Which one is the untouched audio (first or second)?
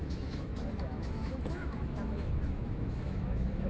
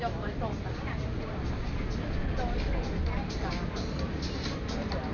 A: second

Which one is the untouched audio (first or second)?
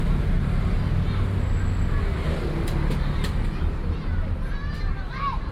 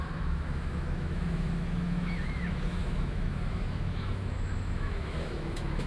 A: first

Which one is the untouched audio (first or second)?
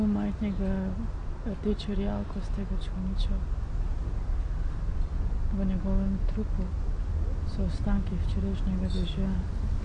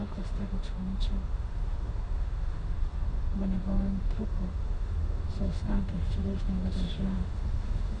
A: first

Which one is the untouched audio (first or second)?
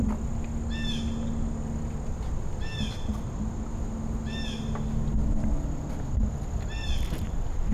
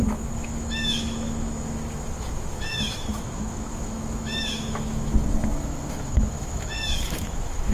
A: first